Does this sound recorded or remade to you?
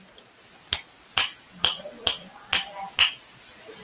recorded